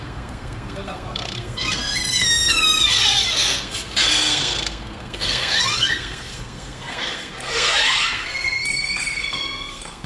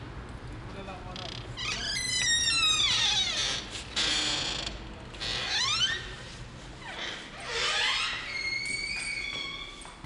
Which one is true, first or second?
second